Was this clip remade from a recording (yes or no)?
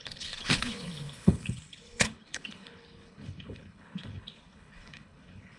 yes